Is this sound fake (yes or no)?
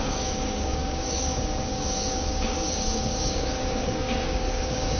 yes